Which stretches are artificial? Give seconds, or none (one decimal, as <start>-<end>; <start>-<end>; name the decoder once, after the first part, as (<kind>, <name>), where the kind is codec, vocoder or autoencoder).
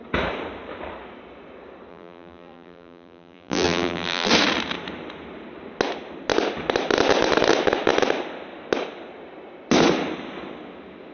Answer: 1.9-4.3 (vocoder, BigVGAN v2)